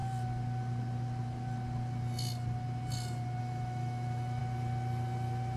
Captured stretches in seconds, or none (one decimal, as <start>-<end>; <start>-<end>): 0.0-3.4; 4.4-5.6